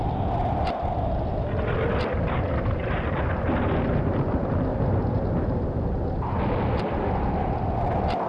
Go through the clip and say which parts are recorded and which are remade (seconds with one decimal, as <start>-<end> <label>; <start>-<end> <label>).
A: 0.0-8.3 recorded